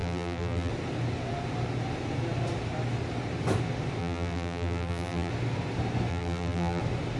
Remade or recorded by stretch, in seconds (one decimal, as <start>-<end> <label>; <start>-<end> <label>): 0.0-0.7 remade; 0.7-4.0 recorded; 4.0-5.3 remade; 5.3-6.1 recorded; 6.1-6.8 remade; 6.8-7.2 recorded